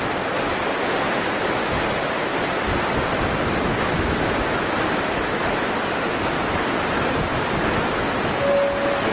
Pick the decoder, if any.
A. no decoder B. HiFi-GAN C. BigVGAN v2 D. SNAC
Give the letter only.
A